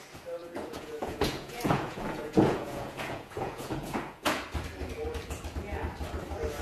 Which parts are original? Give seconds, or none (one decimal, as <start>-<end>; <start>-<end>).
0.0-0.4; 4.4-6.6

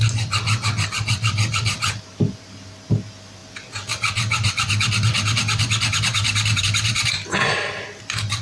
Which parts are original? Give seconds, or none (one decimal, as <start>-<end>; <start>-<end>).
0.0-8.4

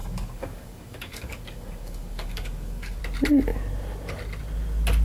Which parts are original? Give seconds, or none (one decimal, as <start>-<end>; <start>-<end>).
3.0-5.0

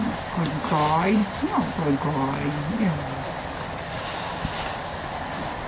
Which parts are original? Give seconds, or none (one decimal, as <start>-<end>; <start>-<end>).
0.0-5.7

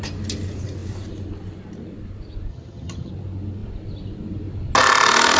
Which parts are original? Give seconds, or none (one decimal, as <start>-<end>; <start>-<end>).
0.0-2.5; 3.1-5.4

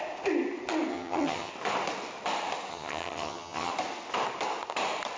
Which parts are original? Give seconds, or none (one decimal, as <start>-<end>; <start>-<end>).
0.0-0.9; 1.5-2.7; 3.7-5.2